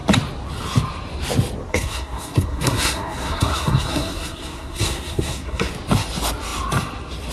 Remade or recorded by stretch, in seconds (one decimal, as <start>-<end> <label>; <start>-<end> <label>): 0.0-1.7 recorded; 1.7-5.7 remade; 5.7-7.3 recorded